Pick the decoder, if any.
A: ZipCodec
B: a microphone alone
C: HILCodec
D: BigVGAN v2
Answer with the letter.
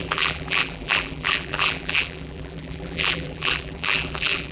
D